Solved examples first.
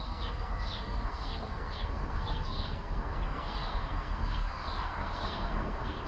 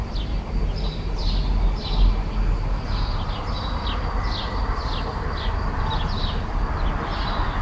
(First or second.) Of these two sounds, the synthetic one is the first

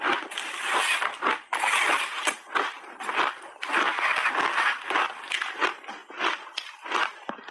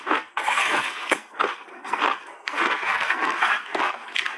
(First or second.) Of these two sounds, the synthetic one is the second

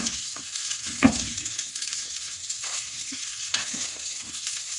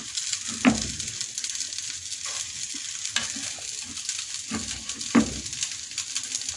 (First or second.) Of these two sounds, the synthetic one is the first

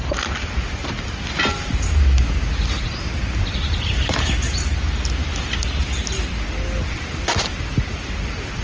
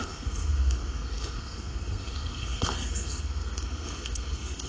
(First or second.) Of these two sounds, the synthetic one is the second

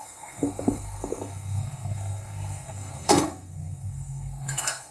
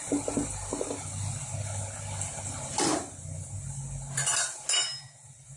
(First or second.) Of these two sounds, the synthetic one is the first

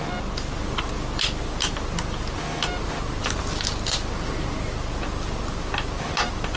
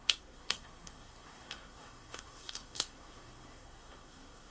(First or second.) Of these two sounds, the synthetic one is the second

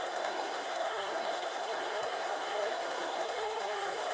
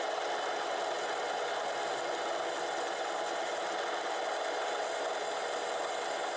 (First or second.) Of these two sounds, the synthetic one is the first